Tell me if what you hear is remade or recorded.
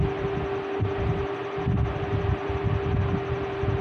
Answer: recorded